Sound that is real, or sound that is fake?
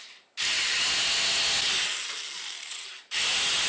real